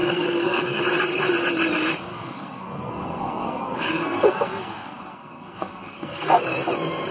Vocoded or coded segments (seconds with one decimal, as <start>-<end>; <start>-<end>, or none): 0.0-0.8; 2.1-6.4